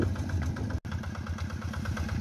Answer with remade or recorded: recorded